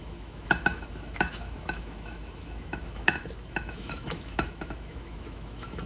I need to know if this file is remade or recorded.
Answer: remade